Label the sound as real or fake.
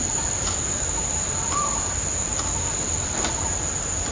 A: real